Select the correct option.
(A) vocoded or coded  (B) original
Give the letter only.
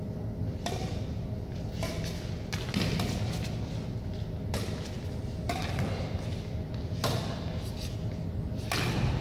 B